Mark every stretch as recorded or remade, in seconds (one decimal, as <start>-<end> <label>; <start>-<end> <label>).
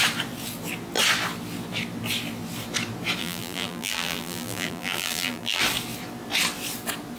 0.0-3.2 recorded; 3.2-5.6 remade; 5.6-7.2 recorded